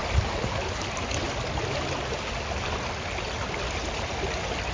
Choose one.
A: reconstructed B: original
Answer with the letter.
B